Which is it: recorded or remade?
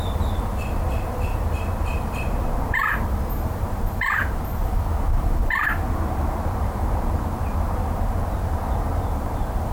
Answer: remade